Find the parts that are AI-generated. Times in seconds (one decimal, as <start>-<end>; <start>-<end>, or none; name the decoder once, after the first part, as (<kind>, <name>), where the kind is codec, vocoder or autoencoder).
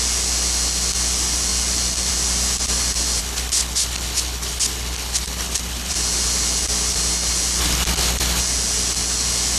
3.2-5.9 (codec, HILCodec); 7.6-8.4